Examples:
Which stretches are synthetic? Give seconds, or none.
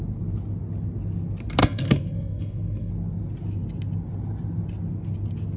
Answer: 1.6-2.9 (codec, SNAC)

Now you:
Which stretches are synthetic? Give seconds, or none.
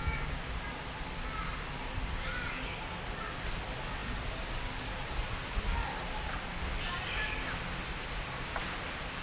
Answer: none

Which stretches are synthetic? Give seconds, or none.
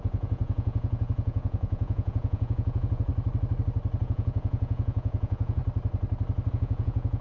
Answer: 0.0-3.1 (vocoder, Vocos); 4.0-5.6; 6.5-7.2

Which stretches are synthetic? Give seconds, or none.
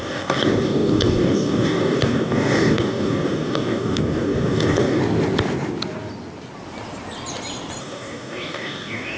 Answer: 0.0-5.0 (codec, DAC); 7.8-9.2